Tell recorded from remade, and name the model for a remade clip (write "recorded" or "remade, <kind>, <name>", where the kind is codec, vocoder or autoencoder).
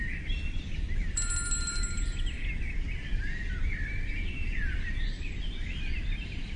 remade, vocoder, BigVGAN v2